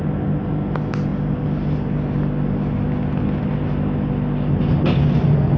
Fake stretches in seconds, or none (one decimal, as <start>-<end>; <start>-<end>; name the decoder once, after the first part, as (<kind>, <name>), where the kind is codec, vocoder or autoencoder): none